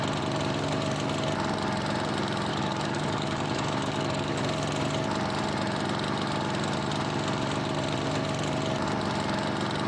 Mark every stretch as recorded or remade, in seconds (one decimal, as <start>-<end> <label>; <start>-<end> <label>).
0.0-2.5 recorded; 2.5-4.4 remade; 4.4-9.9 recorded